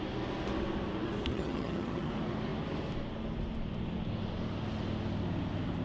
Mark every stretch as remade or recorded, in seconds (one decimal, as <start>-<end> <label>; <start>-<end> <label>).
0.0-1.3 recorded; 1.3-2.1 remade; 2.1-5.8 recorded